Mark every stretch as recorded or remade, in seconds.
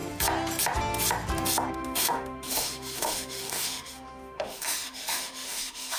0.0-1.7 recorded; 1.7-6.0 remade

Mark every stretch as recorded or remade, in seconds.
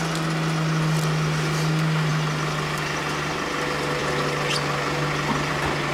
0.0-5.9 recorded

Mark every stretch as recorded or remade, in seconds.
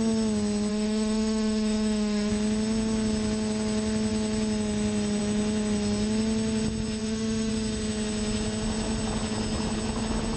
0.0-0.7 recorded; 0.7-2.3 remade; 2.3-7.0 recorded; 7.0-7.5 remade; 7.5-10.4 recorded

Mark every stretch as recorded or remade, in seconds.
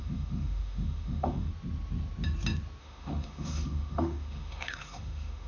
0.0-1.5 remade; 1.5-2.8 recorded; 2.8-5.5 remade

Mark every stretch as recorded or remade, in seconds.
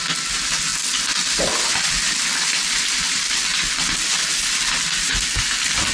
0.0-5.9 recorded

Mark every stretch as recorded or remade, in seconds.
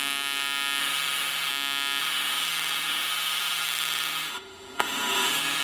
0.0-0.8 recorded; 0.8-1.5 remade; 1.5-2.0 recorded; 2.0-5.6 remade